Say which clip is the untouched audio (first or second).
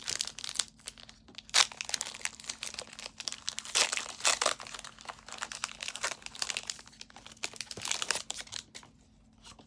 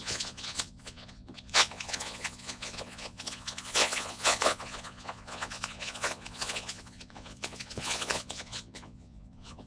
first